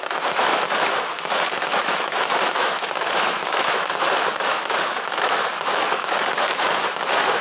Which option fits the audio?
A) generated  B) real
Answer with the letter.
A